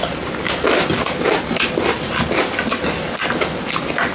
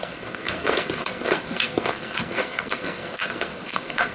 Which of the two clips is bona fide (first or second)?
first